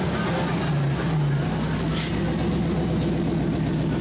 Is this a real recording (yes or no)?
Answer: yes